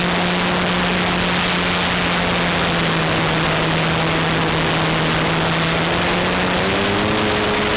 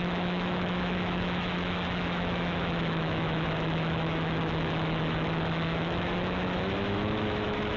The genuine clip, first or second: first